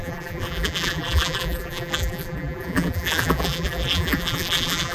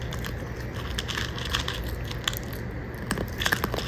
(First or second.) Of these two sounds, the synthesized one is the first